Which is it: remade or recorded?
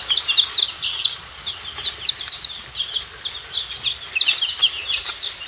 recorded